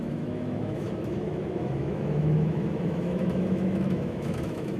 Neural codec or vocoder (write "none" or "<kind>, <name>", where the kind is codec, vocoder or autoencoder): autoencoder, DAC-VAE